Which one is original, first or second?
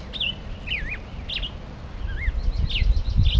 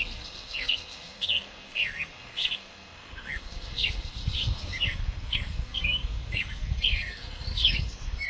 first